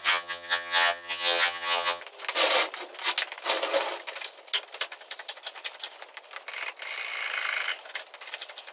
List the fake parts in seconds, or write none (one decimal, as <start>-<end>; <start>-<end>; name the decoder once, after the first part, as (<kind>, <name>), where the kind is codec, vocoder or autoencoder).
0.0-2.0 (vocoder, HiFi-GAN)